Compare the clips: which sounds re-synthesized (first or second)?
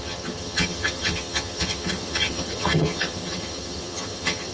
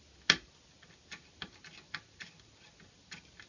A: first